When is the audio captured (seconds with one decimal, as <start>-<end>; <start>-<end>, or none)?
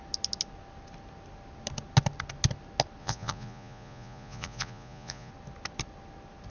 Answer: 0.0-3.0; 5.3-6.5